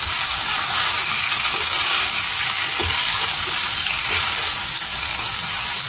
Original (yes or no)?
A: no